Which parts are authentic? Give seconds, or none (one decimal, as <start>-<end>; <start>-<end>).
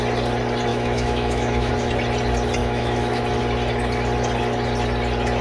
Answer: 0.0-0.7; 1.7-2.6; 3.2-5.4